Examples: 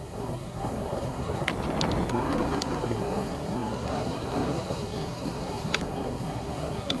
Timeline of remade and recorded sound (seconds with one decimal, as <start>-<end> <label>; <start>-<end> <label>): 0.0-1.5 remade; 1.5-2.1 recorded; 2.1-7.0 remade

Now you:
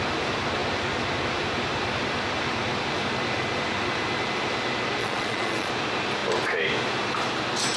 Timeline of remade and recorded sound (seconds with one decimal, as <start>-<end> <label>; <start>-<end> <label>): 0.0-5.0 recorded; 5.0-5.7 remade; 5.7-7.8 recorded

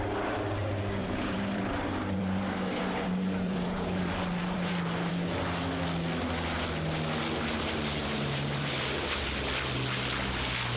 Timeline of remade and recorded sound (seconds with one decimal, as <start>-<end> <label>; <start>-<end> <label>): 0.0-1.0 recorded; 1.0-5.1 remade; 5.1-7.5 recorded; 7.5-9.2 remade; 9.2-10.8 recorded

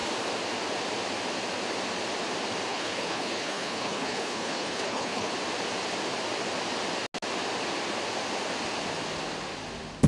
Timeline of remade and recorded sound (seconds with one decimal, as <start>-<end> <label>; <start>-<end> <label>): 0.0-2.7 recorded; 2.7-5.3 remade; 5.3-10.1 recorded

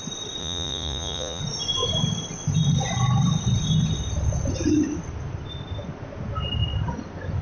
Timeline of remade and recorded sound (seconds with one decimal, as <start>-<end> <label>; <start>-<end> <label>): 0.0-0.4 recorded; 0.4-1.4 remade; 1.4-7.4 recorded

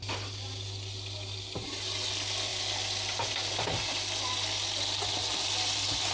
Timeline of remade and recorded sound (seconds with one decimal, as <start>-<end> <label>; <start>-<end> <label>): 0.0-6.1 recorded